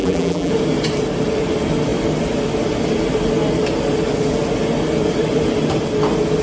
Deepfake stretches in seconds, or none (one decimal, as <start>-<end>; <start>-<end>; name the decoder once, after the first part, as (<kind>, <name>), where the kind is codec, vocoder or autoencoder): 0.0-0.5 (vocoder, BigVGAN v2)